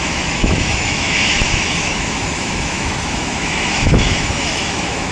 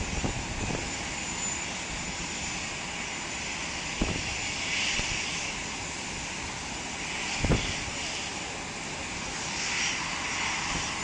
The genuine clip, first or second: second